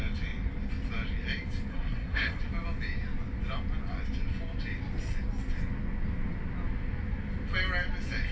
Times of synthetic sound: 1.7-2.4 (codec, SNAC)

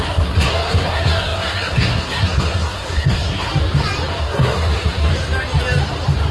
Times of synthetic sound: 0.0-3.5 (codec, SNAC); 4.2-5.1

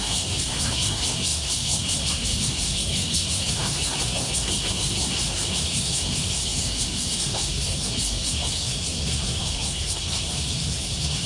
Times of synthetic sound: 0.0-11.3 (codec, SNAC)

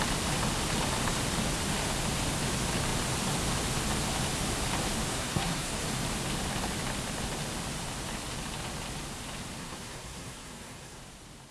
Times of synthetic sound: 5.1-5.8 (codec, SNAC); 9.6-11.0